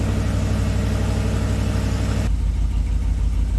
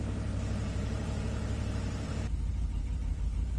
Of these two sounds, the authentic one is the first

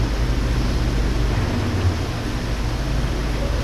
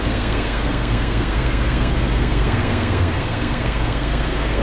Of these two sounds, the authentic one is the first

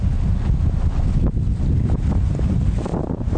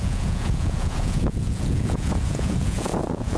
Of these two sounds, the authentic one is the first